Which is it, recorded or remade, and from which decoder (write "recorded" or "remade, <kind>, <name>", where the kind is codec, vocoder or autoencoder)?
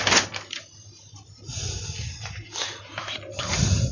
recorded